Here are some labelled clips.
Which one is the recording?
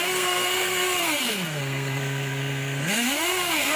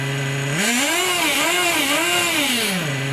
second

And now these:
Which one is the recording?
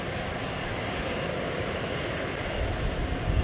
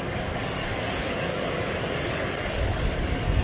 first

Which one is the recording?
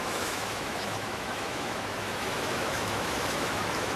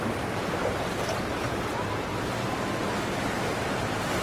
second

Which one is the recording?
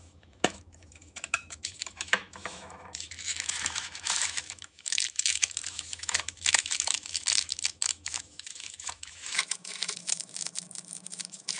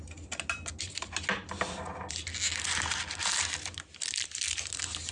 second